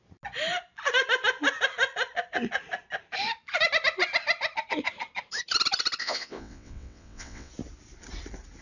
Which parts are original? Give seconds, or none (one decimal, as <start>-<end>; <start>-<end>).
0.0-6.0; 7.5-8.6